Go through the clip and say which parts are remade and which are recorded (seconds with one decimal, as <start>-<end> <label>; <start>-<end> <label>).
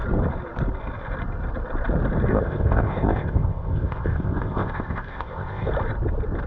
0.0-2.3 recorded; 2.3-5.7 remade; 5.7-6.5 recorded